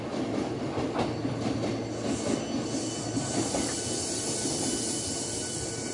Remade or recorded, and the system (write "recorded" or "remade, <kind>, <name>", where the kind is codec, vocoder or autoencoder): recorded